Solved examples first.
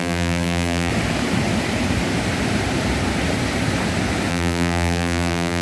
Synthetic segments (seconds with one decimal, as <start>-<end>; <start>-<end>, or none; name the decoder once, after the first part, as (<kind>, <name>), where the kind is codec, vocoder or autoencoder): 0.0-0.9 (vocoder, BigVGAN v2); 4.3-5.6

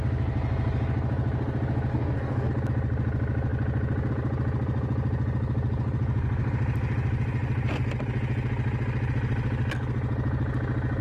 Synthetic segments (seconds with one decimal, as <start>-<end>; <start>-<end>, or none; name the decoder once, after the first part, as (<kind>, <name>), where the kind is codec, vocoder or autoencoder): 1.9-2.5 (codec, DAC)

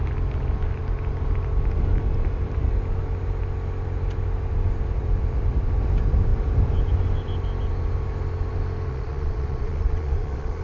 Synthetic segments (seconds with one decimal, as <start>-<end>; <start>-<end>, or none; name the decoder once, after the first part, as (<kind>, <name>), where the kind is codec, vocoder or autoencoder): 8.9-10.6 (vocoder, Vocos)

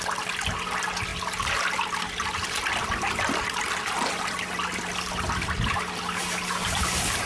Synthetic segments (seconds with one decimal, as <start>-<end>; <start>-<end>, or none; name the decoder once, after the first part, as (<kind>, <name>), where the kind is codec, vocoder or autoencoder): none